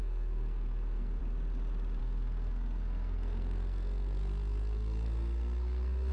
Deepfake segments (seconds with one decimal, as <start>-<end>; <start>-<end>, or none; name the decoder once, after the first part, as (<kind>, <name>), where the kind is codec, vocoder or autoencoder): 0.0-1.2 (codec, SNAC); 2.0-6.1